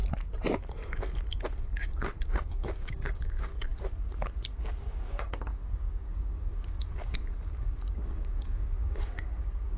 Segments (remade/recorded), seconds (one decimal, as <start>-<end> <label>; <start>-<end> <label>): 0.0-2.4 recorded; 2.4-3.5 remade; 3.5-4.5 recorded; 4.5-9.8 remade